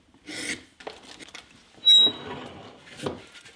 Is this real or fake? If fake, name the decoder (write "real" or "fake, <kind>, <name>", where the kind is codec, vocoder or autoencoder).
real